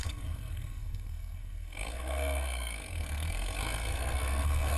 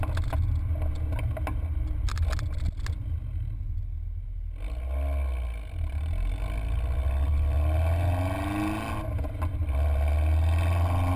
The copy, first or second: first